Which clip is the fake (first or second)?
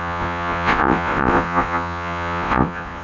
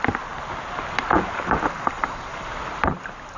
first